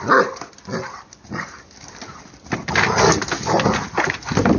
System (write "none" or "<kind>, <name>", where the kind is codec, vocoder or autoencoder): none